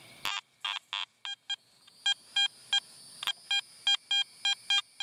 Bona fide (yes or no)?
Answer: yes